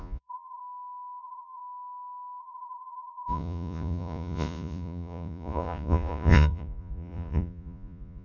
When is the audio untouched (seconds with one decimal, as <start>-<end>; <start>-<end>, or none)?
0.6-1.2; 1.6-2.4